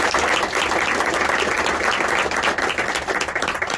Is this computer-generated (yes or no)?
no